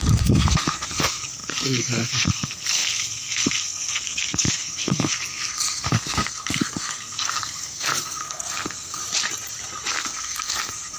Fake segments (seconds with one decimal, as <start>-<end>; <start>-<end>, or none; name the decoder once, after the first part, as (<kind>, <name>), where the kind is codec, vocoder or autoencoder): 0.0-9.0 (codec, SNAC); 9.9-11.0